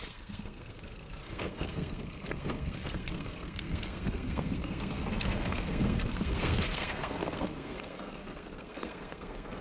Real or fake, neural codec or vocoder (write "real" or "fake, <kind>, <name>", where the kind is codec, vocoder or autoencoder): fake, codec, SNAC